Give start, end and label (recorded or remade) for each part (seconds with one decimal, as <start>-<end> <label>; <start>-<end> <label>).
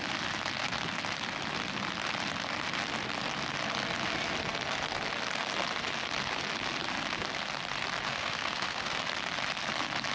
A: 0.0-8.1 recorded; 8.1-9.0 remade; 9.0-10.1 recorded